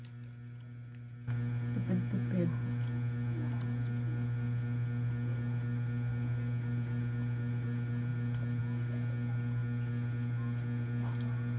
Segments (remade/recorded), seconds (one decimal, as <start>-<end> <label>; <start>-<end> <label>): 0.0-11.6 recorded